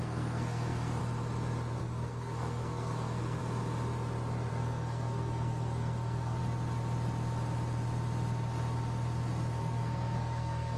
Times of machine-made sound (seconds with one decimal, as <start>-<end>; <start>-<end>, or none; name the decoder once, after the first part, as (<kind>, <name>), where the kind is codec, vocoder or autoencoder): 0.0-1.0 (codec, SNAC); 1.8-3.4; 4.5-6.4; 9.6-10.8